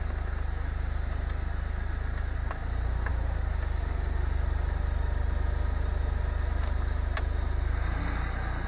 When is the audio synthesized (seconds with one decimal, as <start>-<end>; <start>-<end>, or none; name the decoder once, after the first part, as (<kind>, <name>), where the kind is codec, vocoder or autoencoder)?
none

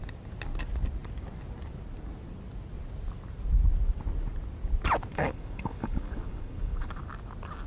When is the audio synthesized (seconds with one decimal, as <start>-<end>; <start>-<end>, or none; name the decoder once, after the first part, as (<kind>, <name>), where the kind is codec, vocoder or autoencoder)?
5.1-7.0 (codec, DAC)

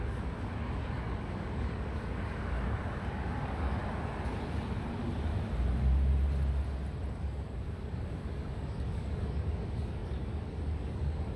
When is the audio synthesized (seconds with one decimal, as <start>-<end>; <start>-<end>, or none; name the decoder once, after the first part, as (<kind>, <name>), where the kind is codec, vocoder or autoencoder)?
0.0-3.8 (codec, DAC); 7.1-11.4

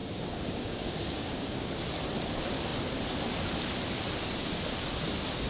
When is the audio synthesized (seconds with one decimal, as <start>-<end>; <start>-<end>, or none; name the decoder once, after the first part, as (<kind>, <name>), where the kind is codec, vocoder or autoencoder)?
0.0-1.6 (codec, DAC)

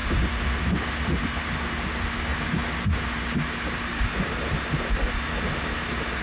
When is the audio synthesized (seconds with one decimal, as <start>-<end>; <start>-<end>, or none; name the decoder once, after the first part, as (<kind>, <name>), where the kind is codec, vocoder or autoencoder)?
none

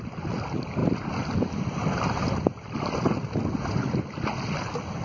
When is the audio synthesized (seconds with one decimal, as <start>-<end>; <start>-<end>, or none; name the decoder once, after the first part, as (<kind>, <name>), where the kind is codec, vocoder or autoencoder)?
none